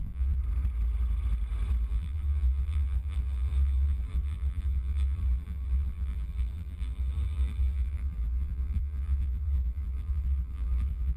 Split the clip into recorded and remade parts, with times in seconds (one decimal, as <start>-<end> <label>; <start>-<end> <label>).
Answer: 0.0-0.4 remade; 0.4-1.9 recorded; 1.9-11.2 remade